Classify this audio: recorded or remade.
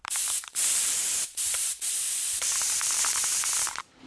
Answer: remade